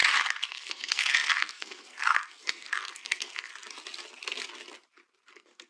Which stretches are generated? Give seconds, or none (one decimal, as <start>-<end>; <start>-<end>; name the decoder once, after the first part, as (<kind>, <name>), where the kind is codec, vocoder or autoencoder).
0.0-3.5 (codec, SNAC); 5.3-5.7